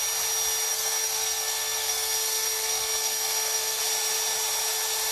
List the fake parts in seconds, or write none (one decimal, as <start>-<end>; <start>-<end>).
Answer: 0.7-3.8